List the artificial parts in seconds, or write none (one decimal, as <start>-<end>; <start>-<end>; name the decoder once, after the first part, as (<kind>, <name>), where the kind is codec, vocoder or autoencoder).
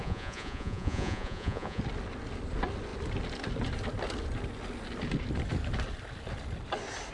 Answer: 0.0-1.8 (vocoder, Vocos)